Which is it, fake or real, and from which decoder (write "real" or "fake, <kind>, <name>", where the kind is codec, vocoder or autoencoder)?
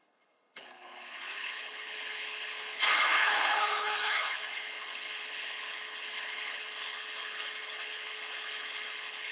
fake, codec, HILCodec